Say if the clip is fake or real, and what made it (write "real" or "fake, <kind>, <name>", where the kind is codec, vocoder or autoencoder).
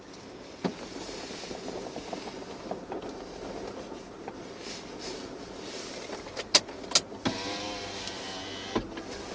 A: real